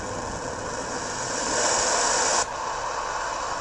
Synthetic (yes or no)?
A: no